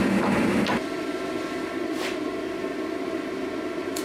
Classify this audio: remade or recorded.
recorded